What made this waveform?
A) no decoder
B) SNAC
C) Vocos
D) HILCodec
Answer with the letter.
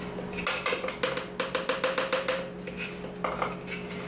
A